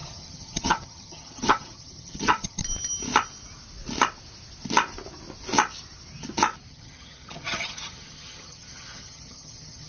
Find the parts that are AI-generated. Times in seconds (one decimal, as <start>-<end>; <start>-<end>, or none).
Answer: 0.0-2.6; 6.7-9.9